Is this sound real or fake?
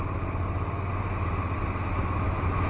real